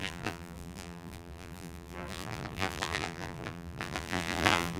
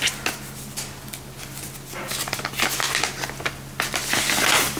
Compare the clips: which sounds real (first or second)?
second